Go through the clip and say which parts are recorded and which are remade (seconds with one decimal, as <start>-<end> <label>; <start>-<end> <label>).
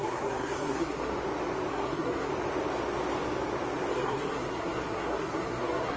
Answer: 0.0-1.1 remade; 1.1-1.7 recorded; 1.7-2.3 remade; 2.3-3.9 recorded; 3.9-6.0 remade